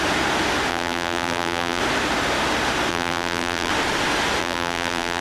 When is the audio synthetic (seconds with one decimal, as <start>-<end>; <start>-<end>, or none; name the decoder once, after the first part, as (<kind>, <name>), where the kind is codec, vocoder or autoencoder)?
0.7-1.8 (vocoder, BigVGAN v2); 2.9-3.7; 4.4-5.2